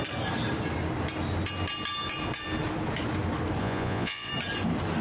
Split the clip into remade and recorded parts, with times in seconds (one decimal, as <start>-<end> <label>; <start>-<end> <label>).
0.0-3.6 recorded; 3.6-4.3 remade; 4.3-5.0 recorded